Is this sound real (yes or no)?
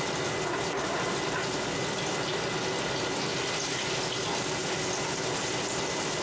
yes